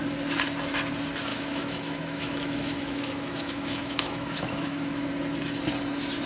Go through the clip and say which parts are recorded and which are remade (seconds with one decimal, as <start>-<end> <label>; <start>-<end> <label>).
0.0-1.3 recorded; 1.3-5.1 remade; 5.1-6.3 recorded

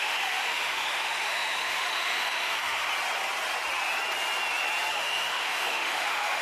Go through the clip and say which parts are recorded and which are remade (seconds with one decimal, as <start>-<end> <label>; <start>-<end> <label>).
0.0-2.9 remade; 2.9-4.9 recorded; 4.9-6.4 remade

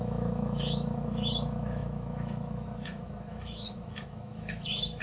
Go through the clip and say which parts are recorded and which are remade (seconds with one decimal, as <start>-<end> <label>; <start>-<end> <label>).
0.0-5.0 remade

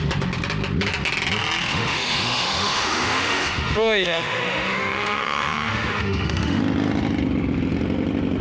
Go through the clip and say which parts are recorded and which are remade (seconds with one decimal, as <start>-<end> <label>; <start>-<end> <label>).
0.0-1.6 recorded; 1.6-6.6 remade; 6.6-8.4 recorded

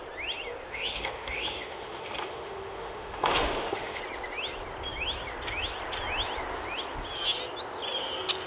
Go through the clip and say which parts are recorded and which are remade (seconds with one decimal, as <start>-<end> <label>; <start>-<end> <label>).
0.0-0.7 recorded; 0.7-4.0 remade; 4.0-8.5 recorded

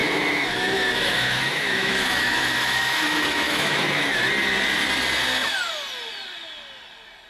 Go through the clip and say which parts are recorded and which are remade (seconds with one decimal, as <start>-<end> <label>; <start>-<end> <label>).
0.0-4.3 remade; 4.3-7.3 recorded